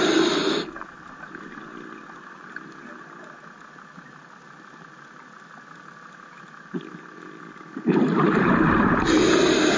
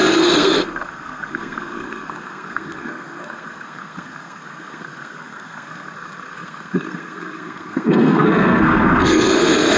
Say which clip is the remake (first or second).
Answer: second